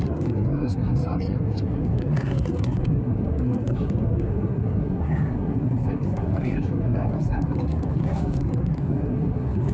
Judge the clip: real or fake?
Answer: fake